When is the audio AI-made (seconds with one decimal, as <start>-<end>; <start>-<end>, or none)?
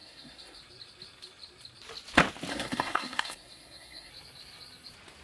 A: 0.0-0.6; 2.5-4.1